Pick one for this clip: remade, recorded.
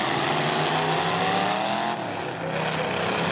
recorded